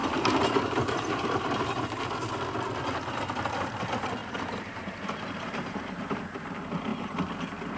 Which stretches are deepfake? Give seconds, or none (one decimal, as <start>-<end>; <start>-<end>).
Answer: 0.0-2.0; 4.2-6.2